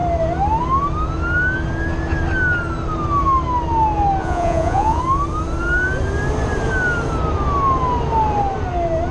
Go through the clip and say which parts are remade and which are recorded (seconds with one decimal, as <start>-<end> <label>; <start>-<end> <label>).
0.0-4.2 recorded; 4.2-5.0 remade; 5.0-9.1 recorded